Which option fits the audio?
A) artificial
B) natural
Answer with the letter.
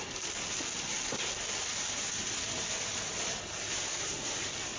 B